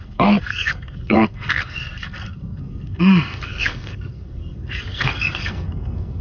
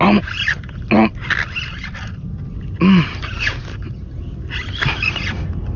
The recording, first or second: second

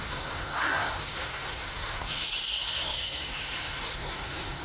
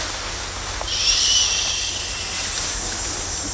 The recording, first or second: second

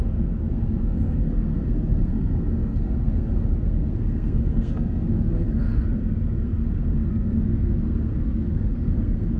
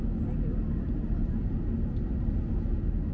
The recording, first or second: second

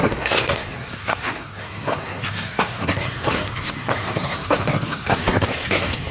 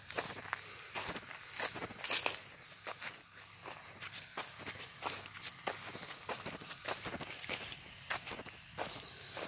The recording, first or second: second